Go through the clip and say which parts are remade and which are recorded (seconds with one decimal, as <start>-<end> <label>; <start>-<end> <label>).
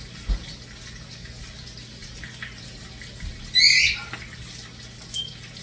0.0-5.6 recorded